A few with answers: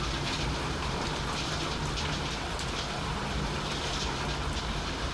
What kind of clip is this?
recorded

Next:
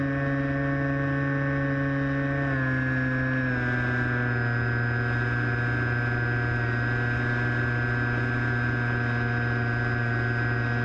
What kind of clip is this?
recorded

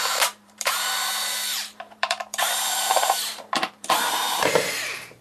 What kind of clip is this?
remade